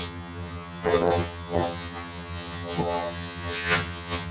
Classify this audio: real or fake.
fake